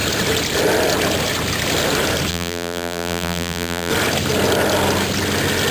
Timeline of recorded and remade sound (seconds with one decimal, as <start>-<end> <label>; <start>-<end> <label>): 0.0-2.3 recorded; 2.3-3.9 remade; 3.9-5.7 recorded